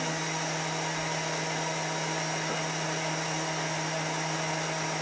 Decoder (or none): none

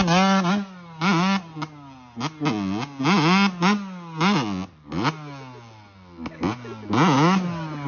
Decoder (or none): none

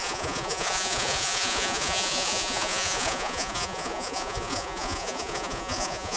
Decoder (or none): vocoder, Vocos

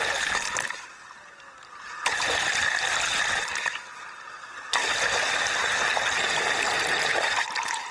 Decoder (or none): none